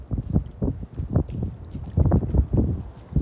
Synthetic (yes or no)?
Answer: no